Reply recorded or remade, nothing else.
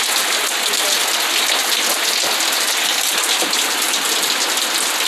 recorded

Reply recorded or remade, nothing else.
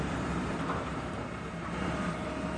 remade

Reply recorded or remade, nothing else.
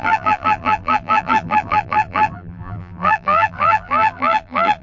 remade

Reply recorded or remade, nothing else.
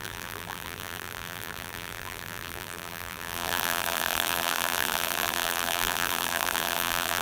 remade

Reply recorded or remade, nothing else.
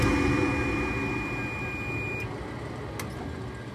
recorded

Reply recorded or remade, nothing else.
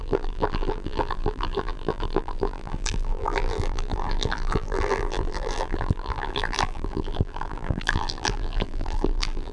remade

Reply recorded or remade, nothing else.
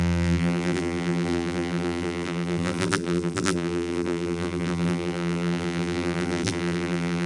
remade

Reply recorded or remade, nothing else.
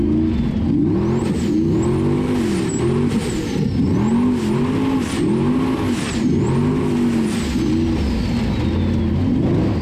recorded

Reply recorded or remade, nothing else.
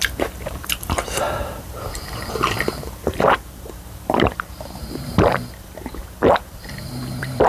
remade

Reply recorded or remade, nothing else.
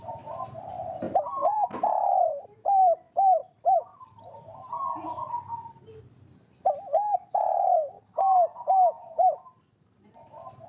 remade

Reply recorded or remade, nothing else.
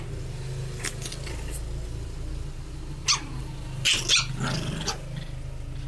recorded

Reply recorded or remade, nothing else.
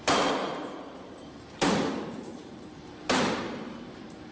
remade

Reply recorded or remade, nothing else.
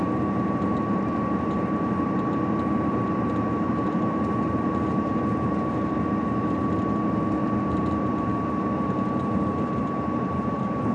remade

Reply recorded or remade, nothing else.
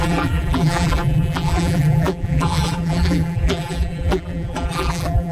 remade